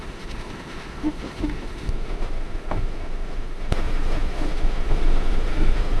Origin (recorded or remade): remade